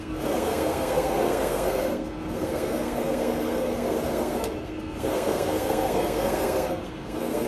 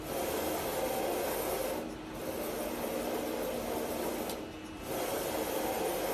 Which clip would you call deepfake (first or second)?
first